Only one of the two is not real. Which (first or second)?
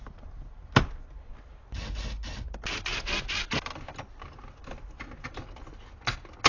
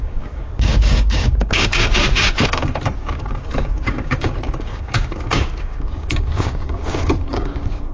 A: second